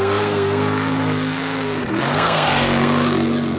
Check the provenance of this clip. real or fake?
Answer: fake